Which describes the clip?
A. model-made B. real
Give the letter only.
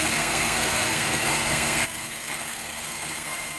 A